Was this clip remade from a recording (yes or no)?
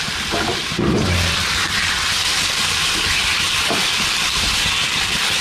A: no